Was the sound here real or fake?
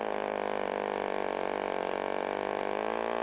real